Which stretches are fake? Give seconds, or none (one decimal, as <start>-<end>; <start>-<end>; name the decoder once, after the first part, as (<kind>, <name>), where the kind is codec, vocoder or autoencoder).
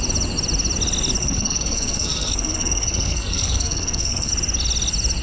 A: 1.2-4.3 (codec, SNAC)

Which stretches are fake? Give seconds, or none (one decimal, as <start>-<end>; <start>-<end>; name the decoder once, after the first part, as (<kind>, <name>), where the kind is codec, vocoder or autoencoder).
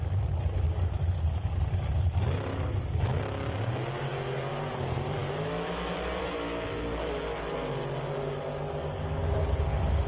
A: none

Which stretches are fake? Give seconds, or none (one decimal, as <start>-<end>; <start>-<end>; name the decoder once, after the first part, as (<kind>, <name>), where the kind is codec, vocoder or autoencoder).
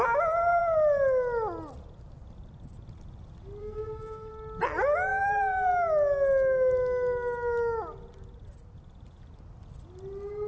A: 3.6-4.3 (codec, SNAC)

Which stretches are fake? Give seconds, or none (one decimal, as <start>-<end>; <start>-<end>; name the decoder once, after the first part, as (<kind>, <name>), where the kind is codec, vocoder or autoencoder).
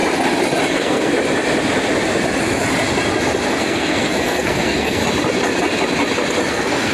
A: 0.7-1.1 (codec, SNAC); 3.6-5.0; 6.5-6.9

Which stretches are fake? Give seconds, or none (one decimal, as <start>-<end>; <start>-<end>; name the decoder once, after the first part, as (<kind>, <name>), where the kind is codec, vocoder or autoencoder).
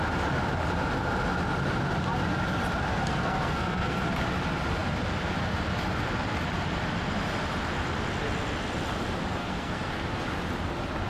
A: 2.9-4.0 (codec, SNAC); 9.4-9.9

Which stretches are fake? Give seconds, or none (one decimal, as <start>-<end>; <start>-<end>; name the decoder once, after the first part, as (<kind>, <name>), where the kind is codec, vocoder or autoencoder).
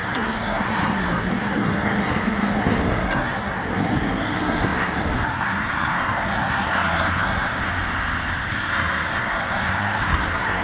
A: 0.0-7.7 (codec, SNAC); 8.5-10.6